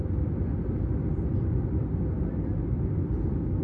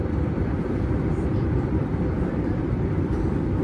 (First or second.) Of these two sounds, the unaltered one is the first